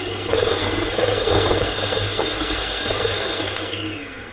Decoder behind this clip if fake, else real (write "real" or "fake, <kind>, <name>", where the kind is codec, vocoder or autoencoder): fake, codec, SNAC